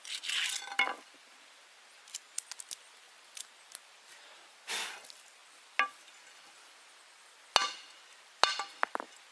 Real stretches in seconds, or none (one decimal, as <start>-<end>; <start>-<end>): 0.0-9.3